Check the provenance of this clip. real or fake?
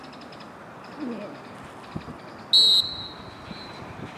real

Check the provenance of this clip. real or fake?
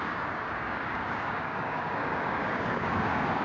fake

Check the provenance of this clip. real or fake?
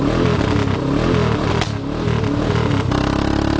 real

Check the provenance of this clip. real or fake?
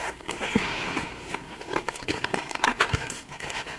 fake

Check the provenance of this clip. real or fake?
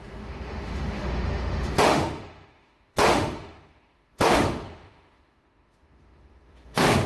fake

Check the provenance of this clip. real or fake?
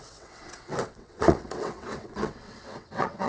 fake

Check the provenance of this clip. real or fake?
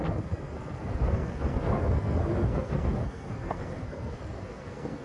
fake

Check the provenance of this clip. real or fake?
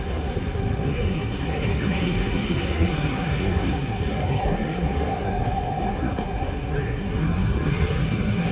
fake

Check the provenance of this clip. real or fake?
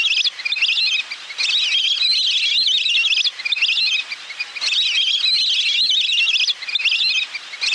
real